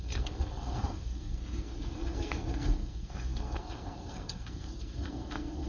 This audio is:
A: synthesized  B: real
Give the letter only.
A